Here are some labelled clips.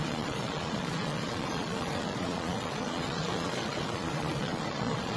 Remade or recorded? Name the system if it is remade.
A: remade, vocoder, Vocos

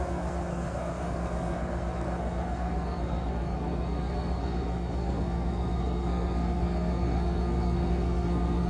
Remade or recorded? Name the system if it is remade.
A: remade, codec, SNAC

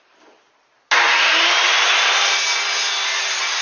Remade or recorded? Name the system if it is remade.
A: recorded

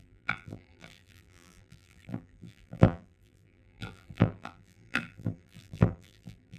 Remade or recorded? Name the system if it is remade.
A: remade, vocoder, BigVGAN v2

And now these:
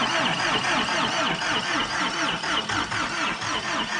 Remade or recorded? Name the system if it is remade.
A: recorded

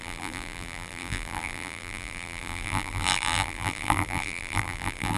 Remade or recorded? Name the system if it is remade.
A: remade, vocoder, BigVGAN v2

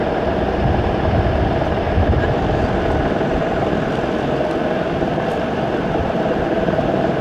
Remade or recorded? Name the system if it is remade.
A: recorded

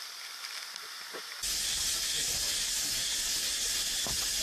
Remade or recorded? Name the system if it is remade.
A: recorded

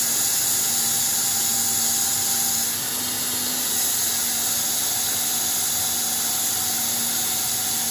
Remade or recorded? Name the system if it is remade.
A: recorded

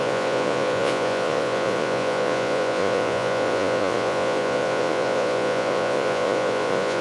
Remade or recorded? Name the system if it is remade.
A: remade, vocoder, Vocos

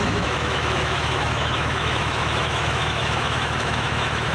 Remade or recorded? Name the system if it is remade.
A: remade, autoencoder, DAC-VAE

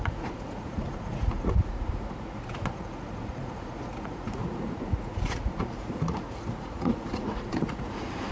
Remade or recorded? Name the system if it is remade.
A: remade, vocoder, Vocos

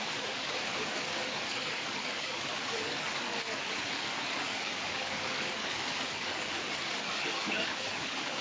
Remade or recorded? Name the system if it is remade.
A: remade, codec, DAC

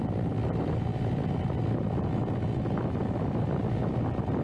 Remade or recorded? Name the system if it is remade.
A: recorded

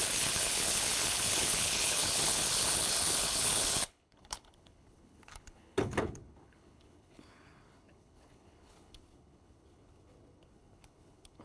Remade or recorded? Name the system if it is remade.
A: remade, codec, HILCodec